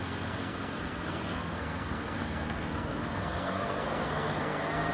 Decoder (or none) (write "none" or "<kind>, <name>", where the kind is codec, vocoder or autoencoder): codec, SNAC